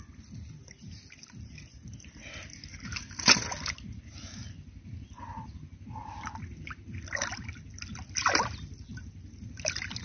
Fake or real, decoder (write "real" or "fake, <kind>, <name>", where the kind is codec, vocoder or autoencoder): real